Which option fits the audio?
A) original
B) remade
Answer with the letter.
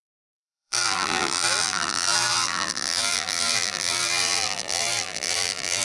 B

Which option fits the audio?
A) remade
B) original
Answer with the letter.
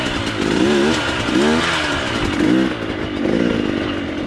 B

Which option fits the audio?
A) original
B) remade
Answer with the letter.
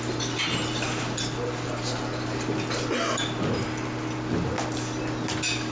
A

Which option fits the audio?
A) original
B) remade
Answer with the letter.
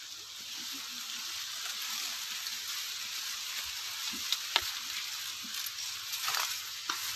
A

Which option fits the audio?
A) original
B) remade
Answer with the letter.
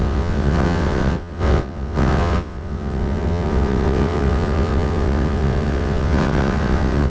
B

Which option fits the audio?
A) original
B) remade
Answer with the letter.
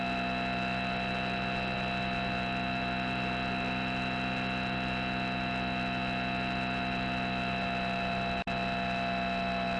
A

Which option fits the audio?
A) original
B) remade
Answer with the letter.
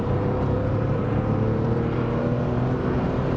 B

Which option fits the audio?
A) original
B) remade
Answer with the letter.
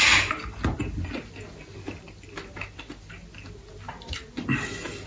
A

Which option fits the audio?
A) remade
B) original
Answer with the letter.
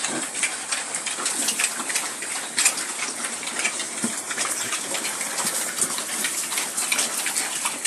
B